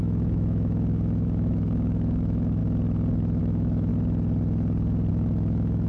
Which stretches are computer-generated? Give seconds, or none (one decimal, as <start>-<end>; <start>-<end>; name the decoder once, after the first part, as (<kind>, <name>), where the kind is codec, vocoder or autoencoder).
0.0-2.6 (autoencoder, DAC-VAE); 3.4-3.9; 5.1-5.9